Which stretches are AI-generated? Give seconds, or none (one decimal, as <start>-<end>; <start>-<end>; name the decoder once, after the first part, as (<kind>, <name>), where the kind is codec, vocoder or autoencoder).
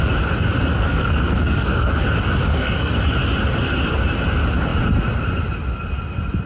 0.7-1.9 (codec, SNAC); 2.5-3.0